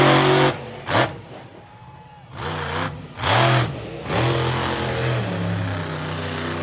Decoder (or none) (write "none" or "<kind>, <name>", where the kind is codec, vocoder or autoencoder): none